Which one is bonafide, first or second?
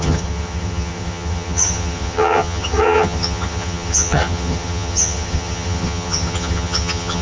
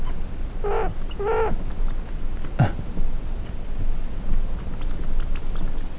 second